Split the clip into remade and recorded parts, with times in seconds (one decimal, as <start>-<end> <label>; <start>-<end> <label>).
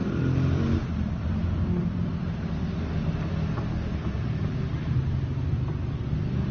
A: 0.0-1.8 recorded; 1.8-2.2 remade; 2.2-5.5 recorded; 5.5-6.5 remade